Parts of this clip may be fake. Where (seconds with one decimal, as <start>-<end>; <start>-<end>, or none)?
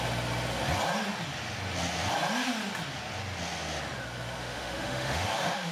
4.4-5.7